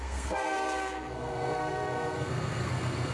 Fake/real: fake